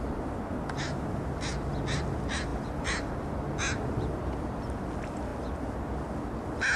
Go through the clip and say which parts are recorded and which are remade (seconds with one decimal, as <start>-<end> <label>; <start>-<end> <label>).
0.0-6.8 recorded